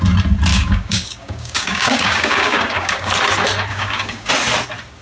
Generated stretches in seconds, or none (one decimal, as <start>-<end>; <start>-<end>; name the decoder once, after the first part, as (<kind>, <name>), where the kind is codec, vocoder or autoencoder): 0.5-3.1 (codec, DAC); 3.7-4.3